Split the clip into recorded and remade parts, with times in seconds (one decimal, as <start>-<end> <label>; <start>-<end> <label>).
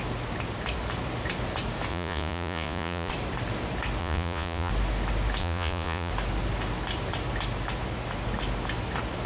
0.0-1.9 recorded; 1.9-3.1 remade; 3.1-4.0 recorded; 4.0-4.7 remade; 4.7-5.4 recorded; 5.4-6.1 remade; 6.1-9.3 recorded